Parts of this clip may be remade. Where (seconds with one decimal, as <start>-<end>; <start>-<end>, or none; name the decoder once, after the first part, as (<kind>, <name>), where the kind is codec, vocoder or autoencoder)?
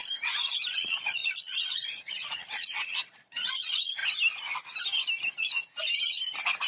0.7-4.0 (vocoder, Vocos)